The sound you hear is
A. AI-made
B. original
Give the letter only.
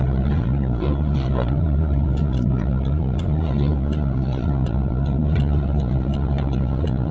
A